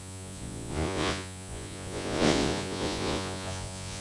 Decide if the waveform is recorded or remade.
remade